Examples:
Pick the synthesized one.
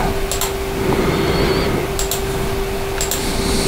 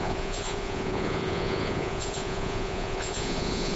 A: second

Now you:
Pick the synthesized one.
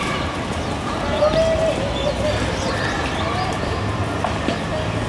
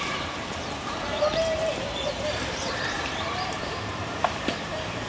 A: second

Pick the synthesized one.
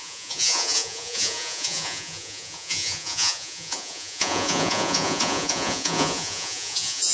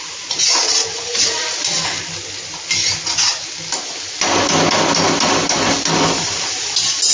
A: first